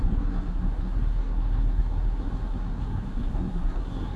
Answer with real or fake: fake